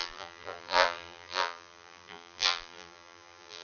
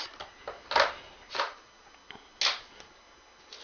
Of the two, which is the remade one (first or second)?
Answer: first